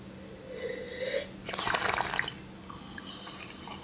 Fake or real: real